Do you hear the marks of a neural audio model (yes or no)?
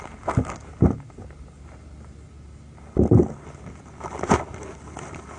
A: no